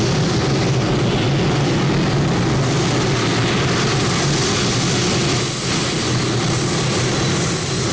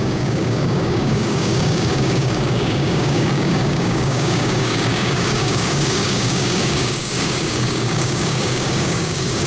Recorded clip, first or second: first